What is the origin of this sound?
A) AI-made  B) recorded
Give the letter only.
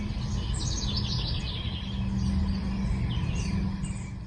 B